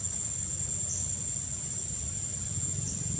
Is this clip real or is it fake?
real